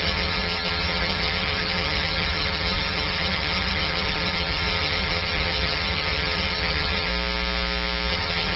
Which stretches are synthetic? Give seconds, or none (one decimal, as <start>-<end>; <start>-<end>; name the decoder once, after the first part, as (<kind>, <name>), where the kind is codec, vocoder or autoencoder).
0.0-7.1 (vocoder, HiFi-GAN); 8.1-8.6